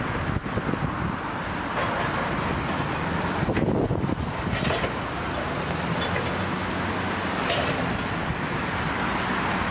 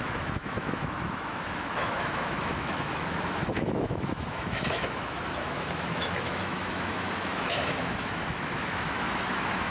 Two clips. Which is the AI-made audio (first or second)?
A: second